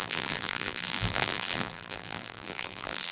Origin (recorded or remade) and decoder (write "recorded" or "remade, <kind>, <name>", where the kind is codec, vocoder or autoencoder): remade, vocoder, BigVGAN v2